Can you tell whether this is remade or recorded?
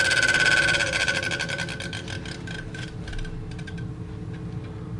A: recorded